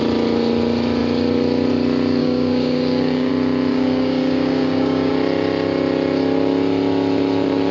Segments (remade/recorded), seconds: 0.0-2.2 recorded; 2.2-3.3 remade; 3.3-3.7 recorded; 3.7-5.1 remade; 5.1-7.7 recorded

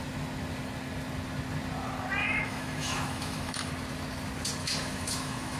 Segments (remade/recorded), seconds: 0.0-2.2 recorded; 2.2-3.7 remade; 3.7-4.6 recorded; 4.6-5.6 remade

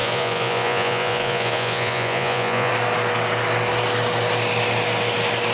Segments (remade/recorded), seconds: 0.0-2.7 remade; 2.7-5.5 recorded